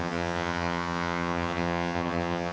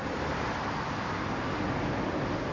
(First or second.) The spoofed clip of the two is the first